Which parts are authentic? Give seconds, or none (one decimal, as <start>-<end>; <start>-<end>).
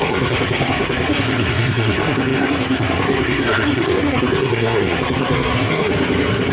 5.9-6.5